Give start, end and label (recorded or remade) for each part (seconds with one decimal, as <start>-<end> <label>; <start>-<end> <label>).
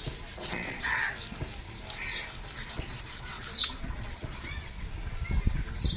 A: 0.0-0.4 recorded; 0.4-1.0 remade; 1.0-2.6 recorded; 2.6-4.9 remade; 4.9-6.0 recorded